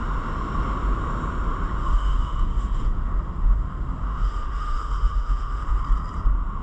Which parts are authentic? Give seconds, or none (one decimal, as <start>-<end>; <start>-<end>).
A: 0.0-1.8; 5.8-6.6